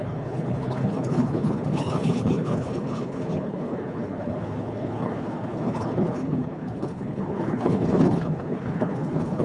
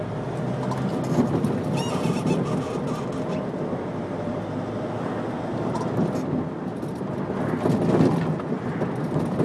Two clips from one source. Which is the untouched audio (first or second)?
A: second